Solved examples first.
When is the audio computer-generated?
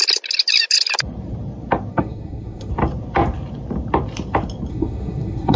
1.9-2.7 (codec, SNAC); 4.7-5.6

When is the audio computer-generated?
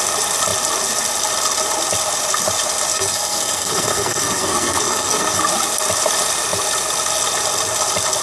2.9-5.4 (codec, SNAC)